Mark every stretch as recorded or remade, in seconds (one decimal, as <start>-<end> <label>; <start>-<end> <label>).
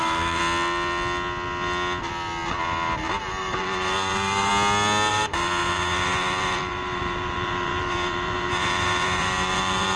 0.0-0.4 remade; 0.4-3.4 recorded; 3.4-4.5 remade; 4.5-5.1 recorded; 5.1-10.0 remade